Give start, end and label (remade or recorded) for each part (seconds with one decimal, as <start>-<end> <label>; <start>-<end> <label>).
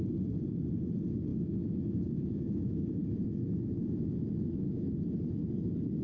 0.0-1.3 recorded; 1.3-4.9 remade; 4.9-6.0 recorded